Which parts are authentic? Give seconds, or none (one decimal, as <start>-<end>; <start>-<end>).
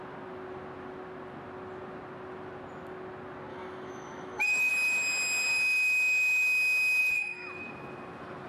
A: 0.0-3.5; 4.7-7.0; 7.7-8.5